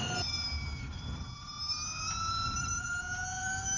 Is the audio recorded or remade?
recorded